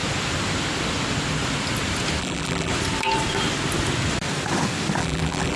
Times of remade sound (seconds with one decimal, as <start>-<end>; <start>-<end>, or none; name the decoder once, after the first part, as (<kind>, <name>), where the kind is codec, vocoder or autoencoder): 2.2-2.7 (vocoder, BigVGAN v2); 5.0-5.6